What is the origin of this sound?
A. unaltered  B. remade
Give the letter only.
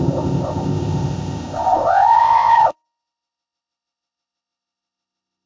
B